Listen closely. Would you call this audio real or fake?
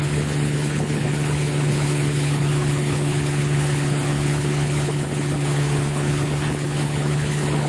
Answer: fake